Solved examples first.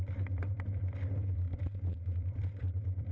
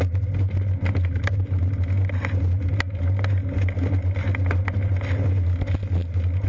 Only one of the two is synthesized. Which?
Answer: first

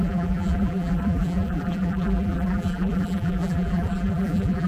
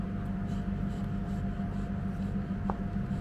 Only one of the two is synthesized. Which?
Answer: first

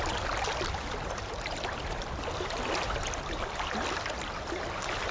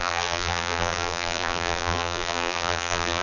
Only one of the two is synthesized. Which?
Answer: second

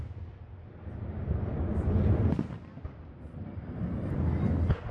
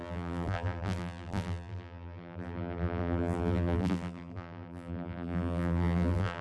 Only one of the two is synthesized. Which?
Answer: second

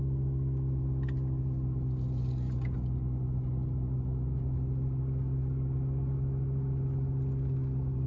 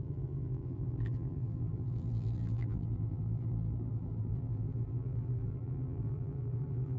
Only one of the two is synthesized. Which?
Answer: second